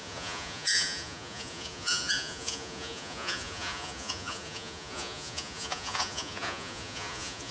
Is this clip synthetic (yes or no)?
yes